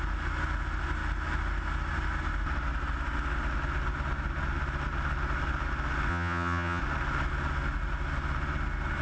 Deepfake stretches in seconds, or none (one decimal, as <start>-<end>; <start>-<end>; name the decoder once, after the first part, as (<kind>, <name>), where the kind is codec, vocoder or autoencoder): 6.1-6.8 (vocoder, HiFi-GAN)